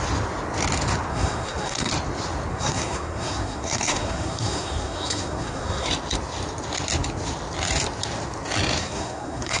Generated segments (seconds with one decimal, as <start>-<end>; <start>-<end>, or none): 1.1-1.9; 2.5-5.9; 8.8-9.6